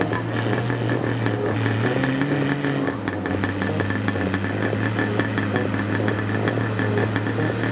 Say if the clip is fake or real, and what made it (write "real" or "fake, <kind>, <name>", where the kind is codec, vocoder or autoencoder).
real